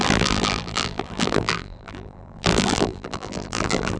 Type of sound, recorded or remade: remade